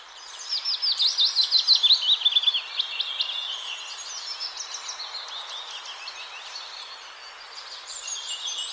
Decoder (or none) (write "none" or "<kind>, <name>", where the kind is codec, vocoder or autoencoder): none